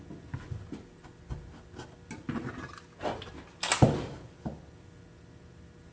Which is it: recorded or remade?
recorded